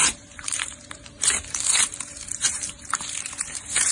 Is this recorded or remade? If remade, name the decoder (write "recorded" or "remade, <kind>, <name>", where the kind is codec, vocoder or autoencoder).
remade, vocoder, BigVGAN v2